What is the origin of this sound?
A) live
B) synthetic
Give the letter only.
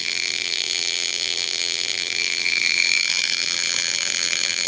B